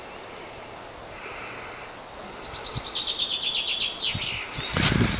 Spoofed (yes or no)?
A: no